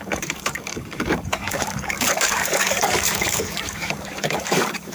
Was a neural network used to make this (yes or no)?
yes